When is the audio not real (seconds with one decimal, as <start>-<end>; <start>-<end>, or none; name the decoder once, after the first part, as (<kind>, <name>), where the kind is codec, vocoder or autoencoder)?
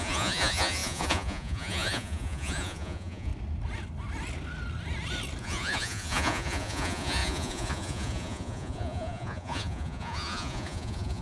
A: 0.0-3.3 (vocoder, Vocos); 5.4-11.2